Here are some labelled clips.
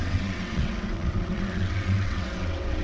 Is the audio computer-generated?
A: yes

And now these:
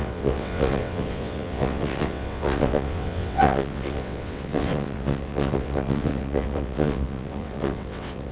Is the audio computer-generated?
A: yes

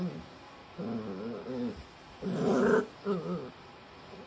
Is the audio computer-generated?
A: no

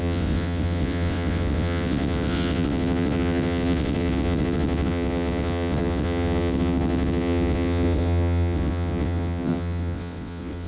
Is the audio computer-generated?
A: yes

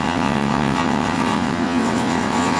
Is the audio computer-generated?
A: yes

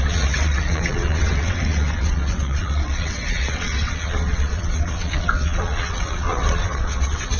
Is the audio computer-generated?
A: yes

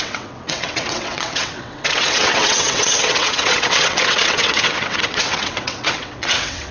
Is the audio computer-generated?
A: yes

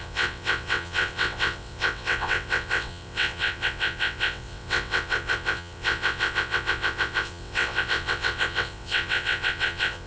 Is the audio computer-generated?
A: yes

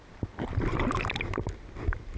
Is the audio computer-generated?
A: no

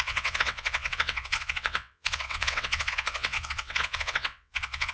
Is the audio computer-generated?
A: yes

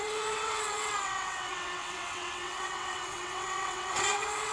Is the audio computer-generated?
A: yes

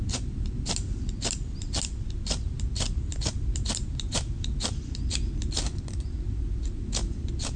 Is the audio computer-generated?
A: no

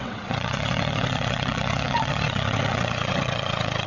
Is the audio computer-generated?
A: yes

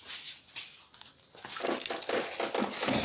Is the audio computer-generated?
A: no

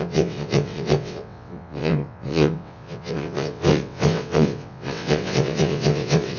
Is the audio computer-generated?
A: yes